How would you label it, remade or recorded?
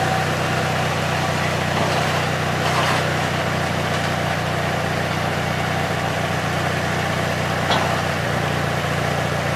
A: recorded